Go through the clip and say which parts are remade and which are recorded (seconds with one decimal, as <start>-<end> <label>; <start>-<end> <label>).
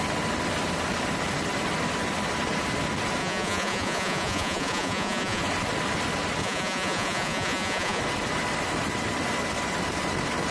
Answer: 0.0-3.2 recorded; 3.2-5.4 remade; 5.4-6.4 recorded; 6.4-8.0 remade; 8.0-10.5 recorded